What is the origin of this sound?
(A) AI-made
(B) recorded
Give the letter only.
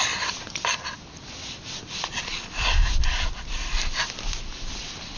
B